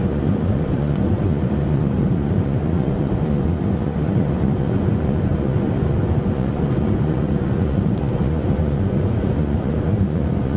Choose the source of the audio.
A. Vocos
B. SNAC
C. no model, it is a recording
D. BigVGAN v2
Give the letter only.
A